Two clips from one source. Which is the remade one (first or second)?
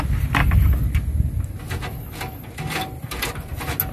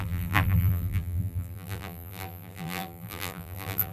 second